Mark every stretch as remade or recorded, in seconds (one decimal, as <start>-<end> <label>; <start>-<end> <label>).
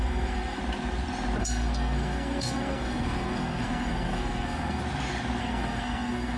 0.0-0.6 remade; 0.6-1.4 recorded; 1.4-4.8 remade; 4.8-5.4 recorded; 5.4-6.4 remade